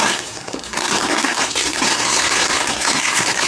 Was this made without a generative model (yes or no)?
no